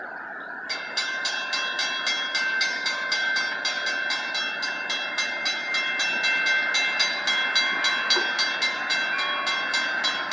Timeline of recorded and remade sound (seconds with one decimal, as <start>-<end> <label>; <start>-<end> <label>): 0.0-10.3 recorded